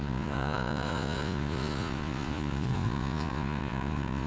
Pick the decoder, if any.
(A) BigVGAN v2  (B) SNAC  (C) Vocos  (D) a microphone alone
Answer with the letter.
C